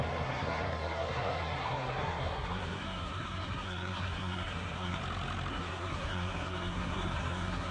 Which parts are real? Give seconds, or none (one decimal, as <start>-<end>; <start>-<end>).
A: 5.0-5.5